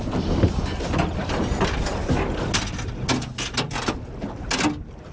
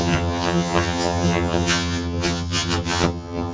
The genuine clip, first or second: first